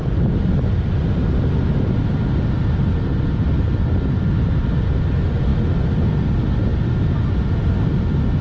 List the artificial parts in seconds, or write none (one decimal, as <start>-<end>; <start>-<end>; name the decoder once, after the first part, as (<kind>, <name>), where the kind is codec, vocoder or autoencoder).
2.9-4.8 (vocoder, BigVGAN v2); 6.7-7.7